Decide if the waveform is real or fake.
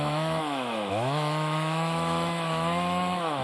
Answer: fake